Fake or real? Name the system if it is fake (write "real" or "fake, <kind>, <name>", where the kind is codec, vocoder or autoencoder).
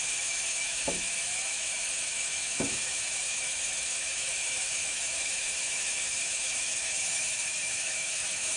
fake, autoencoder, DAC-VAE